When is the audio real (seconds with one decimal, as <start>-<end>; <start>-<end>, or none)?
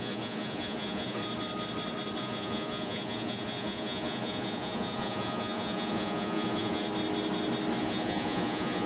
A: 1.2-2.2; 6.9-7.8